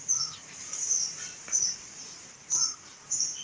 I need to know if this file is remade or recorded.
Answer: remade